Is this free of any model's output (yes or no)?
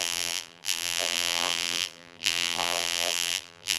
no